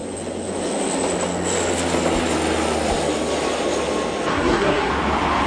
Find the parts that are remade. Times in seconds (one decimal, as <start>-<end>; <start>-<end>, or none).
4.3-4.9